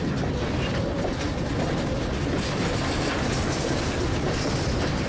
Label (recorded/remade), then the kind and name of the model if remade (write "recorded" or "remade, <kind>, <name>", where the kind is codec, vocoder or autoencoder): recorded